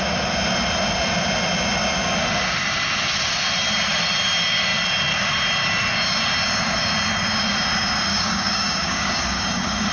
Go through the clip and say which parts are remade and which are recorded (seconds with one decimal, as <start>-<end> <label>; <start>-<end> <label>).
0.0-8.1 recorded; 8.1-9.9 remade